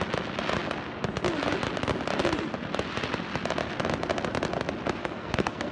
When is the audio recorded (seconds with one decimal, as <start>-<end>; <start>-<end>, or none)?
0.0-5.0